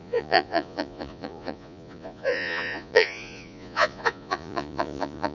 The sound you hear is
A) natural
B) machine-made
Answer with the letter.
B